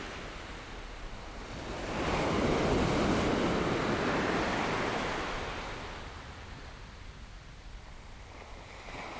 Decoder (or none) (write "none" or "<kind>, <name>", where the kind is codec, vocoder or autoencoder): none